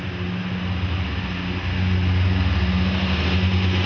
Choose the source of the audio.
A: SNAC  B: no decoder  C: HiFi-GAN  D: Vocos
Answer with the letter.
B